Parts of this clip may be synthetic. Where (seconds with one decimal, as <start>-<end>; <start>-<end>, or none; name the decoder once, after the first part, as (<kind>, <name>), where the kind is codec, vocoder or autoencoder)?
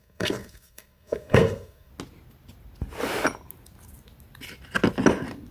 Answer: 0.0-1.9 (codec, SNAC)